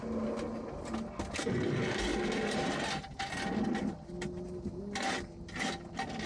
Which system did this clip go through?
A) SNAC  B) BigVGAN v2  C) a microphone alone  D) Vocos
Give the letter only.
C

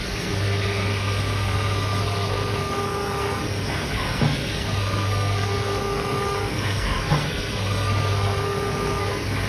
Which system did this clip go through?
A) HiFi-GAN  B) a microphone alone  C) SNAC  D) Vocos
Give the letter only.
C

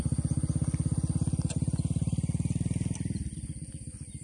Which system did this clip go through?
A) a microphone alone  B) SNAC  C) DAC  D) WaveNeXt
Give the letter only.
A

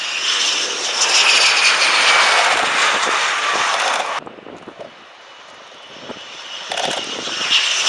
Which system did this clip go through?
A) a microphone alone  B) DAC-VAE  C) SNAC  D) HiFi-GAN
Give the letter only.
A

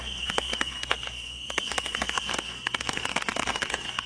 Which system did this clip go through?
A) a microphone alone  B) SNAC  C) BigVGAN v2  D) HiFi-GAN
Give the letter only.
B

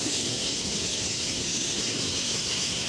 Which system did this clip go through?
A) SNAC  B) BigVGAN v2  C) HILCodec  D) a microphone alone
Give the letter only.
A